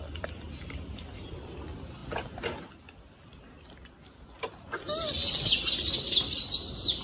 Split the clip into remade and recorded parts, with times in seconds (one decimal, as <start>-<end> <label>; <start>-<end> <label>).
0.0-7.0 recorded